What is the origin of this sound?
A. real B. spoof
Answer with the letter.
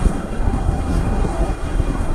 B